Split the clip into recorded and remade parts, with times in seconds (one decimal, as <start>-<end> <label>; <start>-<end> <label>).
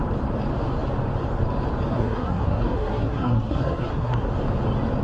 0.0-1.9 recorded; 1.9-4.3 remade; 4.3-5.0 recorded